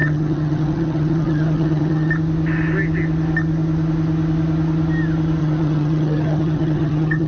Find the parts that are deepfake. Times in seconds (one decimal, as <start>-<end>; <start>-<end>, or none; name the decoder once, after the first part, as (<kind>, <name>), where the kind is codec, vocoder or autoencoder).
0.0-2.1 (vocoder, HiFi-GAN); 5.4-7.3